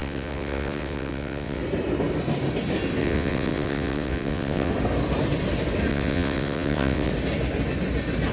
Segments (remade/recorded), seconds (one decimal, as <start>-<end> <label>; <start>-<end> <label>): 0.0-1.6 remade; 1.6-3.0 recorded; 3.0-4.7 remade; 4.7-5.9 recorded; 5.9-7.1 remade; 7.1-8.3 recorded